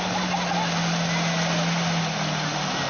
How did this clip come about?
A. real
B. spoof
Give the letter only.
A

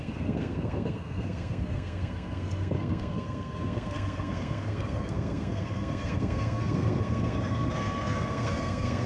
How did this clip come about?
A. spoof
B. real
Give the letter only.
A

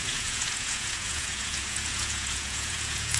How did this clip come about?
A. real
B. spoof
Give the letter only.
B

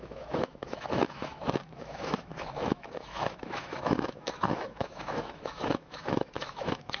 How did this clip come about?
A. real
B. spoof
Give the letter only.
B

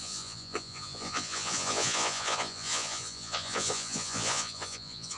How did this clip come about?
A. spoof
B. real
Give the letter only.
A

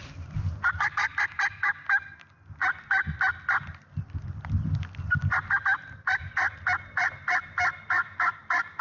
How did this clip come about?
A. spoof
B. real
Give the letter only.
B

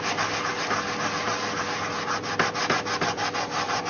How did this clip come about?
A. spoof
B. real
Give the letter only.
B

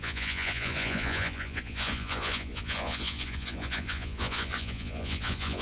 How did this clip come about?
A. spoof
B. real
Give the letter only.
A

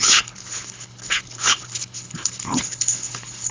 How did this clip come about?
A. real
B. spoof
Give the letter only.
B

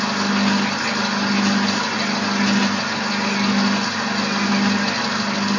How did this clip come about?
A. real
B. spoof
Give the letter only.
A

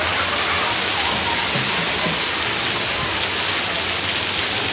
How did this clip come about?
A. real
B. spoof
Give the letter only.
A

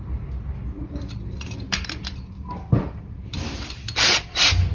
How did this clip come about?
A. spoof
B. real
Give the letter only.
B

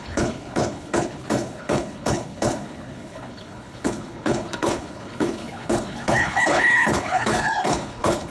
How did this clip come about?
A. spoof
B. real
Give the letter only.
A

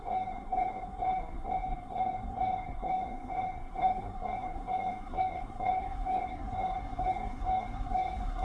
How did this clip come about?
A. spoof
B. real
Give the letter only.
A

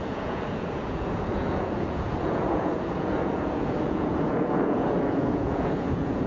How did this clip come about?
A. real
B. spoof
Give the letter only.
B